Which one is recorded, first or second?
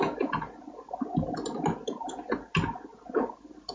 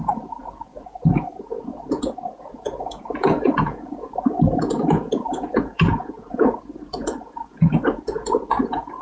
first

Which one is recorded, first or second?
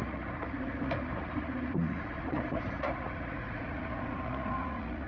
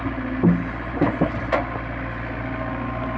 second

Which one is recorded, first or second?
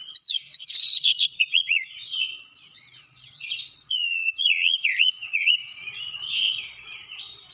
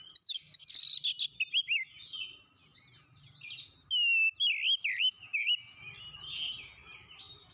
second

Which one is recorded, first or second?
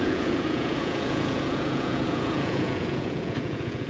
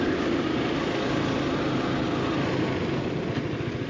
second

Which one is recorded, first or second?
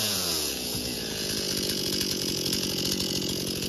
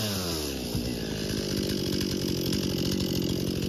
second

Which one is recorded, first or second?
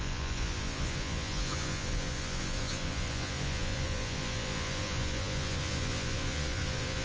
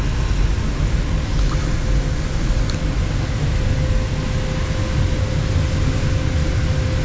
second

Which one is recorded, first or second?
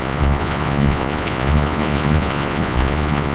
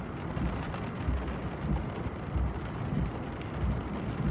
second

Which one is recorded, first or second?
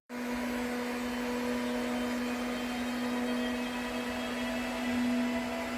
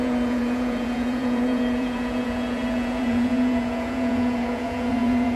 first